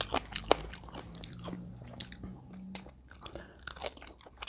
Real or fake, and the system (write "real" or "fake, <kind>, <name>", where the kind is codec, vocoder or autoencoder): real